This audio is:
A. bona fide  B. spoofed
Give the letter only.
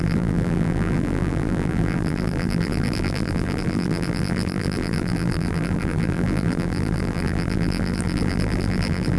B